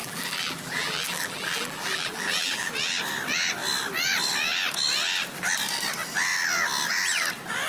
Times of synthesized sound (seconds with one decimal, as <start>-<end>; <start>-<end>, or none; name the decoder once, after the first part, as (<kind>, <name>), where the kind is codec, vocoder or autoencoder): 0.0-2.7 (vocoder, BigVGAN v2)